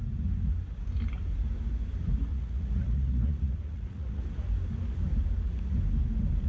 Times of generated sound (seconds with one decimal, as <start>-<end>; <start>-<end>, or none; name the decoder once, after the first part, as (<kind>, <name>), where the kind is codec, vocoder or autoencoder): 2.3-4.2 (vocoder, Vocos)